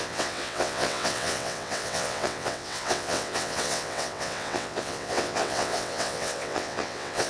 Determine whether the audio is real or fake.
fake